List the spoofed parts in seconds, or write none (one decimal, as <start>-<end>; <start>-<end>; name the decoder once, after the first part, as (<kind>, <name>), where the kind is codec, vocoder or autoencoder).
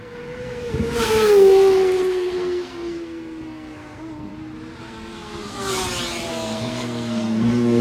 0.0-4.3 (codec, SNAC); 4.8-5.8; 6.3-7.8